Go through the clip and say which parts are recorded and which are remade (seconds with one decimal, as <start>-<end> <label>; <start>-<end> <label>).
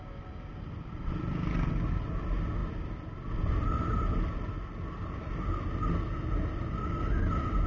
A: 0.0-7.7 recorded